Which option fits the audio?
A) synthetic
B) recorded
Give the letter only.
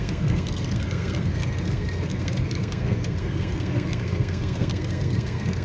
A